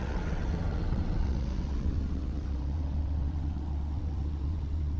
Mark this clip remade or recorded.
remade